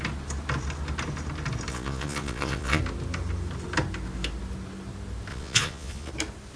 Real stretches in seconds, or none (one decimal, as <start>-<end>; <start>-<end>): 0.0-1.7; 2.8-5.3; 6.1-6.6